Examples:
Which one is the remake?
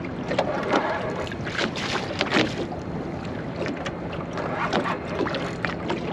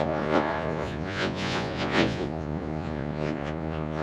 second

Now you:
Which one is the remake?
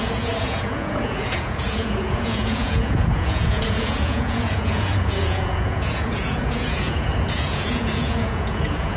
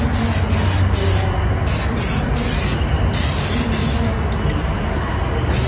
first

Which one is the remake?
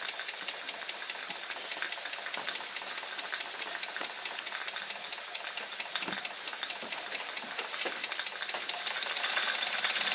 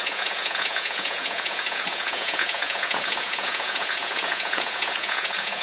second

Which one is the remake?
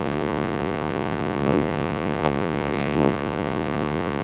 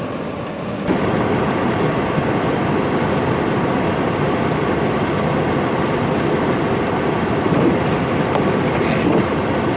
first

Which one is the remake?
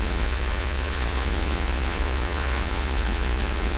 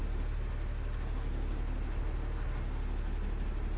first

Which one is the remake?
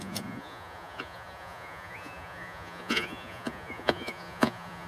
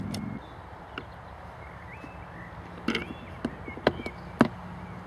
first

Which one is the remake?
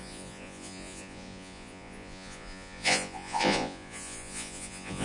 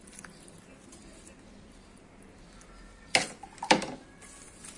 first